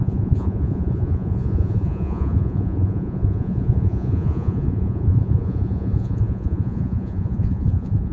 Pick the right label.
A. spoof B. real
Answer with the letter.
A